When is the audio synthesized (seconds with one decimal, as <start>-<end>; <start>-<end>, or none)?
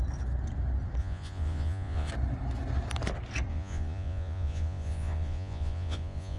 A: 1.0-2.1; 3.5-6.4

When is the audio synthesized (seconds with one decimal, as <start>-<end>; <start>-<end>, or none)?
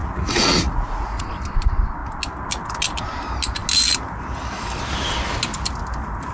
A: 0.0-1.3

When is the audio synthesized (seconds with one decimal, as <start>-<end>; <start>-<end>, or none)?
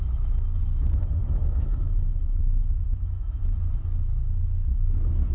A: 1.2-1.9; 2.4-3.4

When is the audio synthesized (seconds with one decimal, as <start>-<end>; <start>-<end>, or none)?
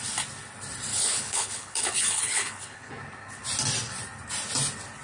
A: 0.9-2.9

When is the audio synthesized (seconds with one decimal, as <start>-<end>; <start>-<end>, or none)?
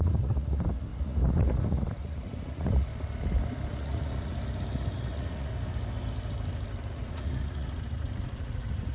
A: 0.0-2.9; 3.7-4.3; 5.0-5.5; 6.9-8.9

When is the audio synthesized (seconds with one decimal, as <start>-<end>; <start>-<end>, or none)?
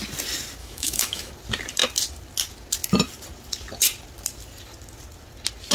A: 0.6-1.3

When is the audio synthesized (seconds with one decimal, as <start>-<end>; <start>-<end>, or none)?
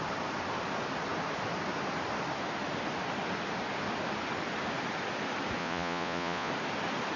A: 5.6-6.5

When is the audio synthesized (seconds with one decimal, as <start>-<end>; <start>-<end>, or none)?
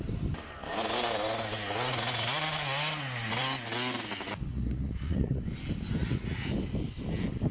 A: 4.5-5.4; 6.0-6.5